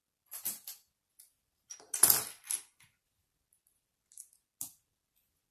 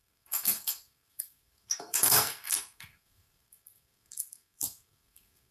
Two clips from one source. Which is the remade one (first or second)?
second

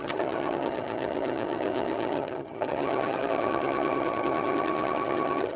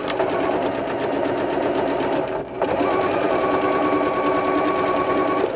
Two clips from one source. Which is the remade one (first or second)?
first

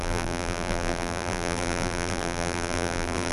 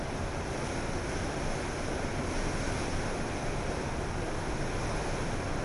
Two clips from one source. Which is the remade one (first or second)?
first